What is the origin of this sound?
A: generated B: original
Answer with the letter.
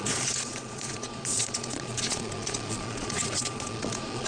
A